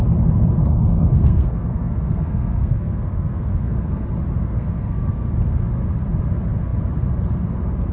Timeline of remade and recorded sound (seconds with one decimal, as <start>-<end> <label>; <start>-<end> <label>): 0.0-0.6 recorded; 0.6-4.0 remade; 4.0-4.4 recorded; 4.4-5.3 remade; 5.3-7.9 recorded